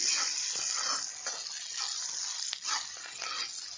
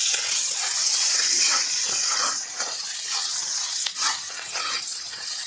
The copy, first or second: second